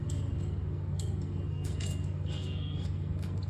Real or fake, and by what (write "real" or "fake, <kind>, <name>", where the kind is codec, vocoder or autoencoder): fake, codec, SNAC